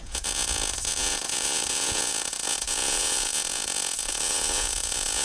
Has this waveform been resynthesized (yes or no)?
yes